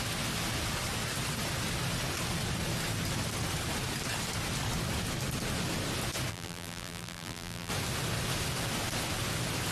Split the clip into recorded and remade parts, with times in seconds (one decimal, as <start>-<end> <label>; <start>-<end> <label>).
0.0-6.3 recorded; 6.3-7.7 remade; 7.7-9.7 recorded